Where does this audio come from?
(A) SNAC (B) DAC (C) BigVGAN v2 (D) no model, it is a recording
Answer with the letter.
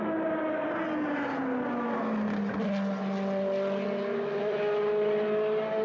D